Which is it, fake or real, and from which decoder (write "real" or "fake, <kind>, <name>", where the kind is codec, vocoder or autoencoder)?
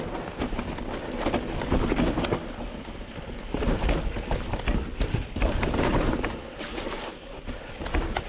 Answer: real